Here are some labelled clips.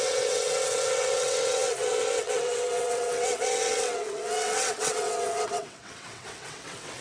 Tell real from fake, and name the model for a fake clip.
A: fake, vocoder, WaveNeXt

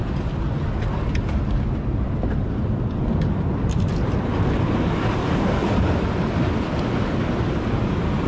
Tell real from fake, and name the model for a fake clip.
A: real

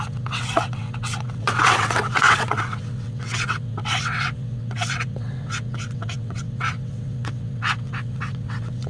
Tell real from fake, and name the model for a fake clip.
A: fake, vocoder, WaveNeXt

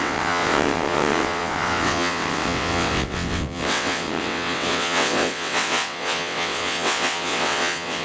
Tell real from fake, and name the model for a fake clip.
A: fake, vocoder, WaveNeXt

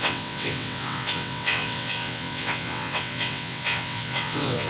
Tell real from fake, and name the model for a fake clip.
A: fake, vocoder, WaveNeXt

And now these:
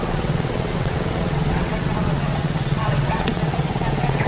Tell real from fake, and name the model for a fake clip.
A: fake, vocoder, WaveNeXt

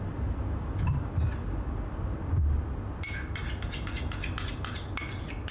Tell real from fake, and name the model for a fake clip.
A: real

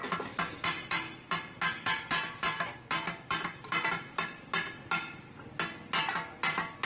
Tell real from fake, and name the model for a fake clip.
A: real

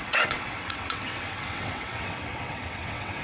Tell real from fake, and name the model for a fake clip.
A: fake, vocoder, WaveNeXt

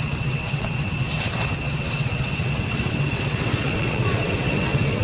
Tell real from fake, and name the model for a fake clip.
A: fake, vocoder, WaveNeXt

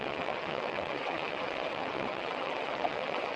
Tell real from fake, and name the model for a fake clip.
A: fake, vocoder, WaveNeXt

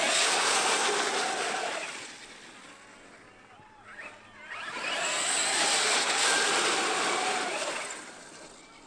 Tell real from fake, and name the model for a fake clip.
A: real